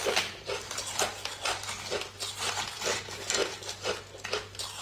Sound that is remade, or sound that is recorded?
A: recorded